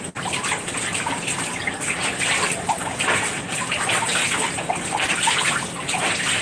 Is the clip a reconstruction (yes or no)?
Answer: no